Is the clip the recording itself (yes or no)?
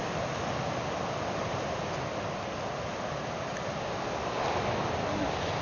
yes